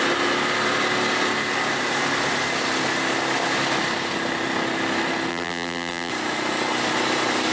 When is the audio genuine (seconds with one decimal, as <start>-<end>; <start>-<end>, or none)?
0.0-5.3; 6.1-7.5